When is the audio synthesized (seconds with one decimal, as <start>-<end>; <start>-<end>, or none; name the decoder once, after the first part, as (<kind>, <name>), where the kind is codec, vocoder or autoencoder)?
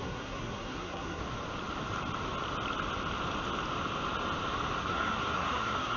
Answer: 0.0-1.2 (codec, SNAC); 4.8-6.0